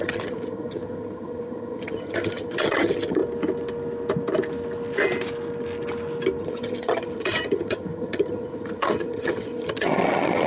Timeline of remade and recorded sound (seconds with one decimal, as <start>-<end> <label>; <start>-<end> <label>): 0.0-3.2 remade; 3.2-6.4 recorded; 6.4-10.5 remade